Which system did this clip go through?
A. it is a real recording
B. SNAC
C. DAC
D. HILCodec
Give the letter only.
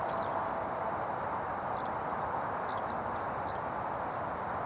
A